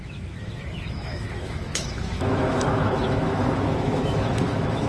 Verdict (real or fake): fake